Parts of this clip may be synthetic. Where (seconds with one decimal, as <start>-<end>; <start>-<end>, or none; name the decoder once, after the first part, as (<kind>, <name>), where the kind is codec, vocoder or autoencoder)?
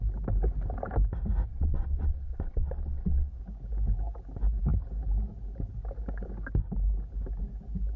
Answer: 1.5-3.4 (vocoder, WaveNeXt)